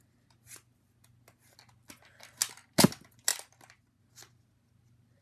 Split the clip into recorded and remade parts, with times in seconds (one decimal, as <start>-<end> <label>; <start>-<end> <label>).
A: 0.0-5.2 recorded